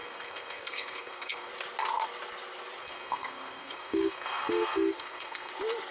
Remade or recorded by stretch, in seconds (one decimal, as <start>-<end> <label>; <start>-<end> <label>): 0.0-1.5 remade; 1.5-2.8 recorded; 2.8-5.5 remade; 5.5-5.9 recorded